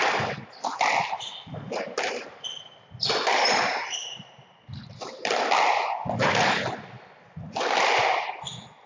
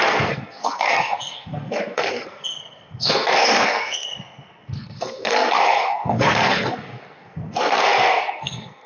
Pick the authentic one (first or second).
first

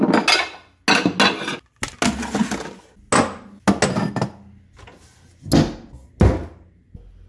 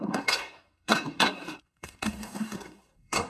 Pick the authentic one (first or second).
first